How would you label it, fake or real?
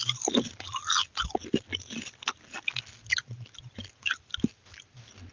real